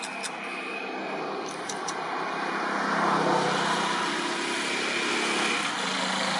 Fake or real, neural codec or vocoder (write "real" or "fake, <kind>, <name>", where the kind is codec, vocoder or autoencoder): real